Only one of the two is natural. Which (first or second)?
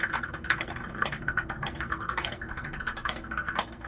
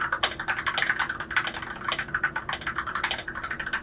second